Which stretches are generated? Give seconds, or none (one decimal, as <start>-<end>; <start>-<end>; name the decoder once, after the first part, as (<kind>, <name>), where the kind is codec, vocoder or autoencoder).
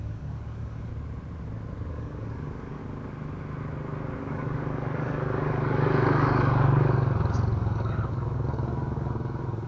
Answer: 0.0-0.9 (codec, DAC); 1.9-2.8; 4.2-9.7